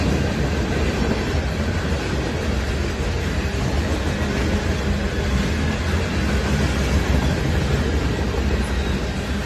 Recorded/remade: recorded